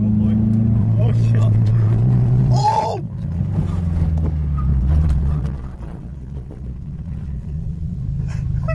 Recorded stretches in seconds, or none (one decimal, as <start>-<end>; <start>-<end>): 0.0-0.8; 3.4-4.7; 8.0-8.7